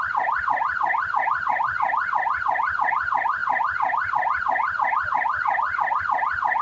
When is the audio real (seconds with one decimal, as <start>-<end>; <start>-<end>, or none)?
0.0-6.6